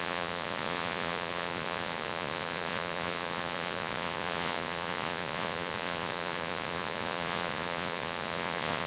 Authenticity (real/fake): fake